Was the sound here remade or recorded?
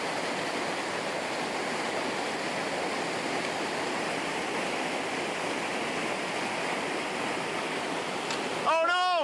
recorded